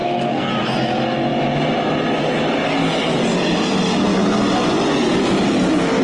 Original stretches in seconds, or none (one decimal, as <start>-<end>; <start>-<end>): 0.5-6.0